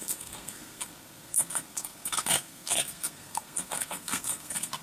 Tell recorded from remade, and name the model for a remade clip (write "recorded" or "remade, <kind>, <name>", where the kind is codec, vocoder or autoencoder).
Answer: remade, codec, SNAC